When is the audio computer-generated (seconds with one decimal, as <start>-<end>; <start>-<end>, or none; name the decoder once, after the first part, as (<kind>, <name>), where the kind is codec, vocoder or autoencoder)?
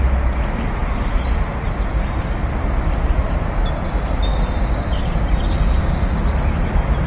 none